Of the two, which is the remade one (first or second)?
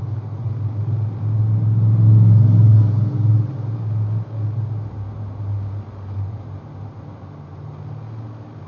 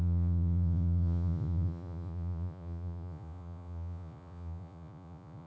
second